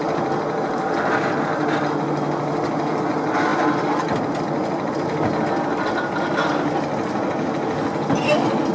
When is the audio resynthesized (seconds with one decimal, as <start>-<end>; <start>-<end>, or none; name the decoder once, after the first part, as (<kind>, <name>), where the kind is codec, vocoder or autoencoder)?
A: none